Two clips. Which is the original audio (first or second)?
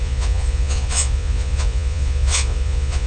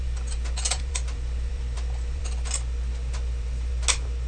second